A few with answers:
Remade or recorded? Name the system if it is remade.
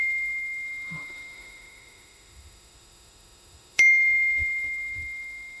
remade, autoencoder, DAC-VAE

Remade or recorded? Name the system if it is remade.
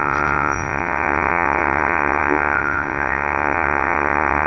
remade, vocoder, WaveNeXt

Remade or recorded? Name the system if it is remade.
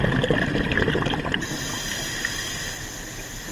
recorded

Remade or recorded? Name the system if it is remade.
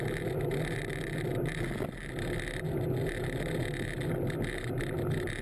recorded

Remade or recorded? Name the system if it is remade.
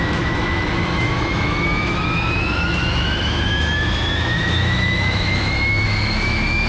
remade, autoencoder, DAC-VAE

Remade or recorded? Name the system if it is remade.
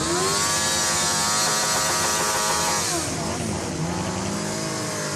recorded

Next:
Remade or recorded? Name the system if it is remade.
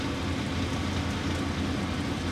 recorded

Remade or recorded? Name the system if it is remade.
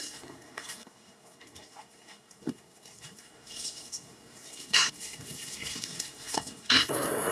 remade, codec, SNAC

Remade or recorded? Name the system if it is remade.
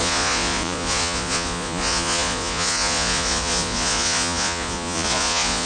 remade, vocoder, Vocos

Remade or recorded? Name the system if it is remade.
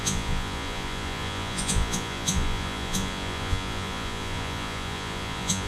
remade, vocoder, Vocos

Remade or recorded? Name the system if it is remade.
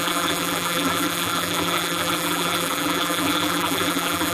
remade, vocoder, BigVGAN v2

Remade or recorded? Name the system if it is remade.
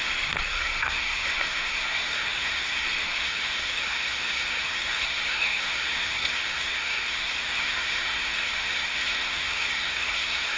remade, codec, SNAC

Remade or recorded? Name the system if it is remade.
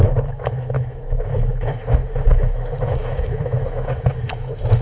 remade, autoencoder, DAC-VAE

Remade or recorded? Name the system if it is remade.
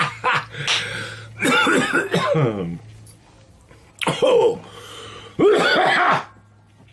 recorded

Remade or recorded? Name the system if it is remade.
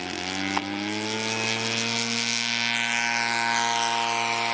recorded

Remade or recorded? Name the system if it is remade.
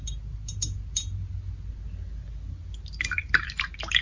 recorded